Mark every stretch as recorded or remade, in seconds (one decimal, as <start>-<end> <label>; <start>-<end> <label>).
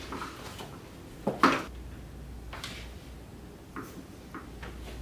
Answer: 0.0-5.0 recorded